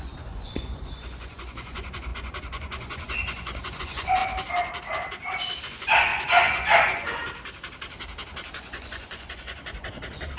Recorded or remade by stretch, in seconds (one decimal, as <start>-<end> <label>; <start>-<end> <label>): 0.0-4.2 remade; 4.2-5.6 recorded; 5.6-7.2 remade; 7.2-8.5 recorded; 8.5-10.4 remade